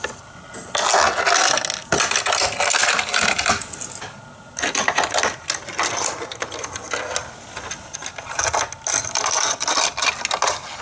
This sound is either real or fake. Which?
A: real